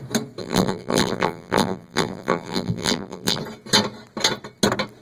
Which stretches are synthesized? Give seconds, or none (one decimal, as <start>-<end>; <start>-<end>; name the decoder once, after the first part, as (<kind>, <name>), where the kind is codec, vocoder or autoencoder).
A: 0.4-3.4 (vocoder, BigVGAN v2)